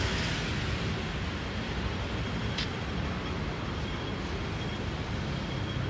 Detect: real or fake real